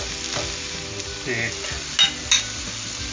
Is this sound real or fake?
real